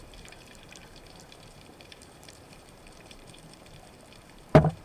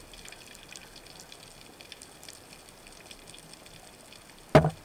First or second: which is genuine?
second